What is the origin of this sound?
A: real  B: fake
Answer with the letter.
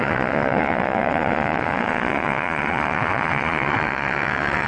B